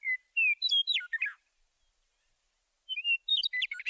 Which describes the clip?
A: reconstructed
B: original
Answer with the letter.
B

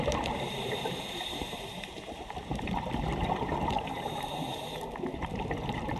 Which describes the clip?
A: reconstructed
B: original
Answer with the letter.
A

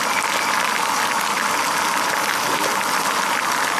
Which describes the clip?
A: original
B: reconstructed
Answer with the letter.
A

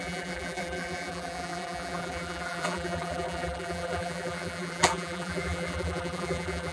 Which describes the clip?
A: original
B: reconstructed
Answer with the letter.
B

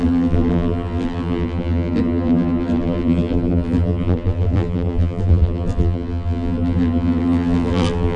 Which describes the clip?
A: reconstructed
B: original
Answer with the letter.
A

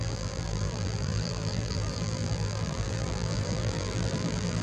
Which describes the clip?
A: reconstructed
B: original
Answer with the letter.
A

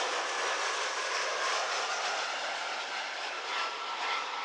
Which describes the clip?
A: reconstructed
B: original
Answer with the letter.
A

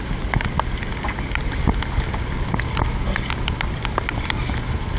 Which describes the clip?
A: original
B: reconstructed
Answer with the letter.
A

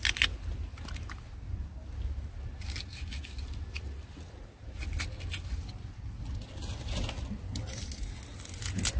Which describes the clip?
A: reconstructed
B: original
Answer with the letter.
B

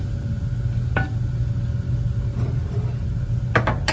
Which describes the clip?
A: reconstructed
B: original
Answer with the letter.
B